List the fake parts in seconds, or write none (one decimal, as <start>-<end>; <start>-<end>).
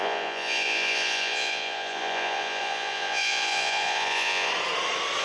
0.0-4.5